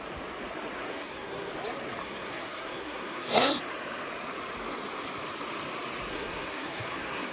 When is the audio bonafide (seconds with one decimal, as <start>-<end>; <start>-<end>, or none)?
0.0-0.9; 1.5-2.0; 3.6-6.1